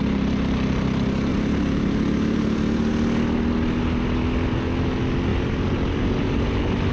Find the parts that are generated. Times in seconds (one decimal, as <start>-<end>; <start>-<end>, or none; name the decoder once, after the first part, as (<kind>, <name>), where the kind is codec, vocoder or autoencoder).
1.3-2.9 (vocoder, BigVGAN v2); 5.3-6.9